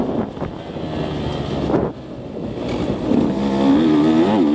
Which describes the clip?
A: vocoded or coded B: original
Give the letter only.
B